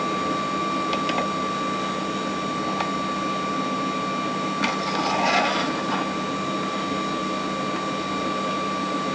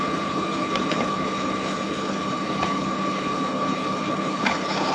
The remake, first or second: second